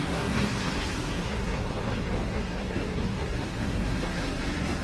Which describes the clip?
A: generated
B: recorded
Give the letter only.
A